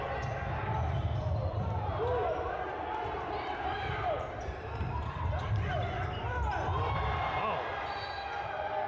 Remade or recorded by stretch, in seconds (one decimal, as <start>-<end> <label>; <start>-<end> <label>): 0.0-1.4 recorded; 1.4-5.7 remade; 5.7-8.9 recorded